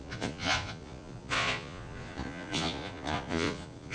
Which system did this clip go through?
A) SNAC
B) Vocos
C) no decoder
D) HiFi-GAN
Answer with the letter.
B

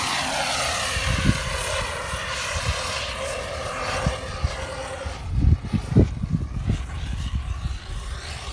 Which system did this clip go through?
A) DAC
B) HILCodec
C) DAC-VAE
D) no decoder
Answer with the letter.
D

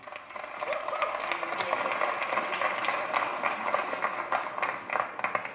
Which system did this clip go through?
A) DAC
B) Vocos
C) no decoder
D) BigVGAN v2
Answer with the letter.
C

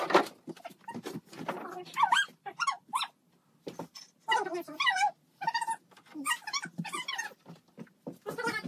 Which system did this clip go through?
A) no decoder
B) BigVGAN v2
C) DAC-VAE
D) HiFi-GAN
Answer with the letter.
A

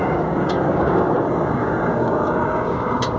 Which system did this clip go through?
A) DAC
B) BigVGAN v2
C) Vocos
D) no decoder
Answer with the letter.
A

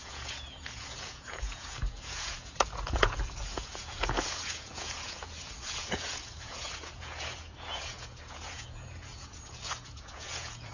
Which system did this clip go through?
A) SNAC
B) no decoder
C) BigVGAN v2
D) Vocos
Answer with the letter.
D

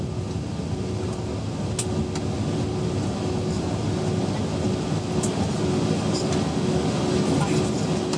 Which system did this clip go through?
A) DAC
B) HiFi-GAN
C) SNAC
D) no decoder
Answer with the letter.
D